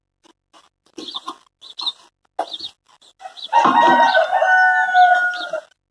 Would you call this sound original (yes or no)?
yes